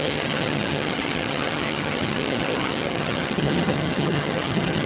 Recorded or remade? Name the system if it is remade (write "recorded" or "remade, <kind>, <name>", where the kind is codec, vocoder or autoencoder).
remade, vocoder, HiFi-GAN